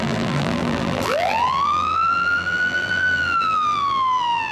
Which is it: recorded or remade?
remade